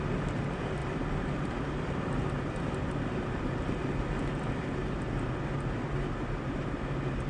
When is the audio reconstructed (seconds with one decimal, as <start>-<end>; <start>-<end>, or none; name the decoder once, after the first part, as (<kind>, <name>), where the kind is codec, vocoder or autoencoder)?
0.8-2.2 (vocoder, BigVGAN v2)